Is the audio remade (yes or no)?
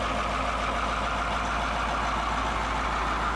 no